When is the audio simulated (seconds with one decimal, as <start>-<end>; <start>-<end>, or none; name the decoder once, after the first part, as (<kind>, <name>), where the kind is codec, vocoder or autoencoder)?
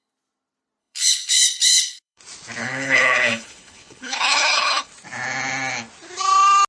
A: 0.8-2.2 (codec, HILCodec); 2.6-4.9